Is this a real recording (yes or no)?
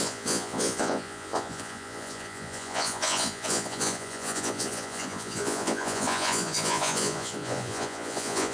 no